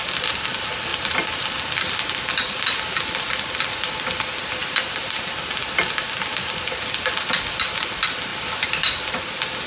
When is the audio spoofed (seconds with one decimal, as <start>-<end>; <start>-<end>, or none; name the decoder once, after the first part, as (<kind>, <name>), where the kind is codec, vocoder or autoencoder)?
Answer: 0.9-1.9 (vocoder, BigVGAN v2); 8.3-9.2